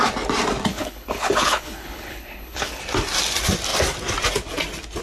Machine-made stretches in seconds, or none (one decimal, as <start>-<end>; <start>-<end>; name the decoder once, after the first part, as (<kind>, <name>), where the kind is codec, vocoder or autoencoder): 0.7-2.8 (codec, HILCodec)